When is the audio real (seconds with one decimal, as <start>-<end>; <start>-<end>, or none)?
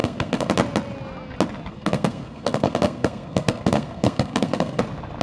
0.5-1.7; 4.8-5.2